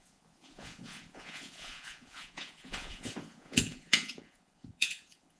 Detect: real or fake fake